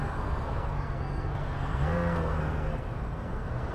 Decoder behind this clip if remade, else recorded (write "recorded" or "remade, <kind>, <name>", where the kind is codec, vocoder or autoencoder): remade, codec, SNAC